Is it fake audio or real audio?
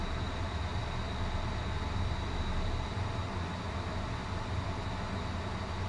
real